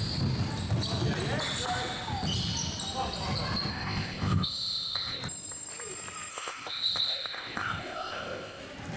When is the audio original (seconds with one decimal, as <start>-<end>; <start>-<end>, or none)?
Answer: 0.0-3.7; 5.2-6.3; 8.6-9.0